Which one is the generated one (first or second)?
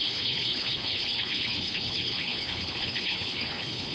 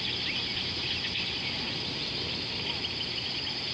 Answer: first